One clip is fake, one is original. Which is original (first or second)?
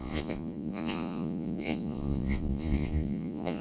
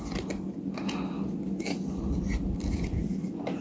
second